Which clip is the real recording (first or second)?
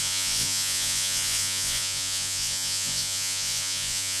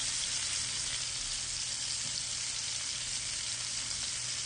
second